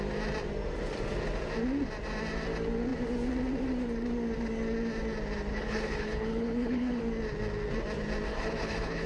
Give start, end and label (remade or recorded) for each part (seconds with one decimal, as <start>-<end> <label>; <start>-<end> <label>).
0.0-5.5 recorded; 5.5-7.0 remade; 7.0-8.3 recorded; 8.3-9.1 remade